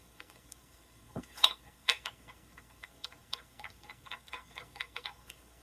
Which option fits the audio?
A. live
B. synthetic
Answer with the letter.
B